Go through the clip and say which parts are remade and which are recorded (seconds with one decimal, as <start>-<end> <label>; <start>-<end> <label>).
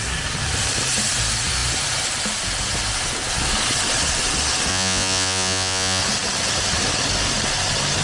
0.0-4.7 recorded; 4.7-6.0 remade; 6.0-8.0 recorded